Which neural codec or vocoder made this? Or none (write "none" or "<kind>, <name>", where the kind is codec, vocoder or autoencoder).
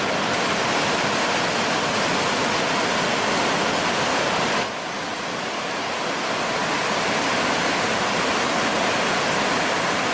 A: none